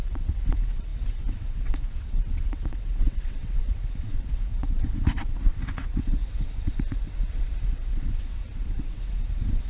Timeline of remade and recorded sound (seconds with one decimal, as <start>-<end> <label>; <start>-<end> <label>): 0.0-9.7 remade